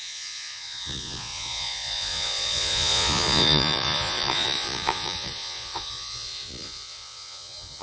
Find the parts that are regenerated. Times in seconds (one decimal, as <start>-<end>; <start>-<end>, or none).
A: 0.0-7.8